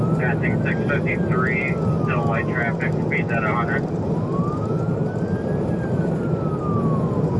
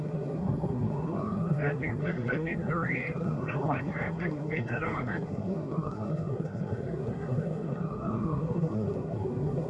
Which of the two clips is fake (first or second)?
second